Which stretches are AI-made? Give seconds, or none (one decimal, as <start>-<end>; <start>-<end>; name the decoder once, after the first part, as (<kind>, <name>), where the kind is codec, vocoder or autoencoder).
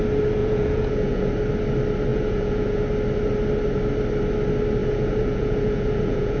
0.4-1.3 (vocoder, Vocos); 2.1-2.8; 4.8-6.4